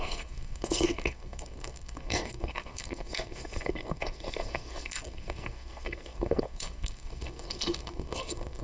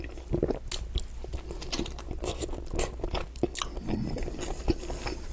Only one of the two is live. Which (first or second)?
second